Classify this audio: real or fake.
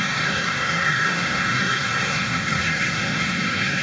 fake